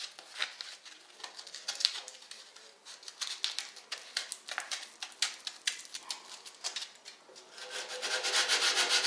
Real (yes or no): yes